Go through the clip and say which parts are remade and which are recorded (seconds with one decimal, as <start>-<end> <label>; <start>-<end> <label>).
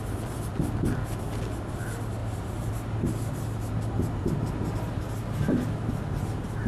0.0-6.7 recorded